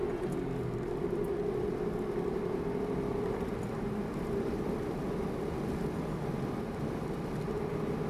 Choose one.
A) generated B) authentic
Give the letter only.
B